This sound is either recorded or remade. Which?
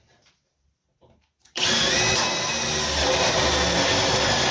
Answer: recorded